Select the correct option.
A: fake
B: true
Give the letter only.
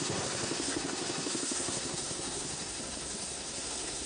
A